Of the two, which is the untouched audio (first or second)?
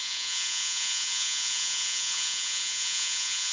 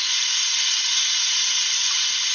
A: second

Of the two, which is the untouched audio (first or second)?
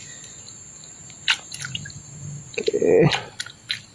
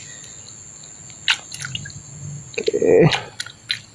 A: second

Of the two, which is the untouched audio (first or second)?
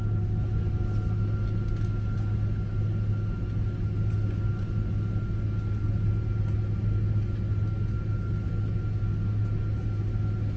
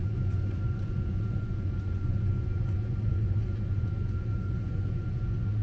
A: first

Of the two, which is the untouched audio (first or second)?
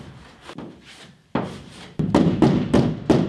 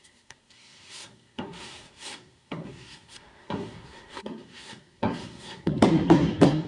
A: first